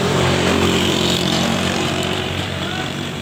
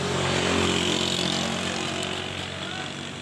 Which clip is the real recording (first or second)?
second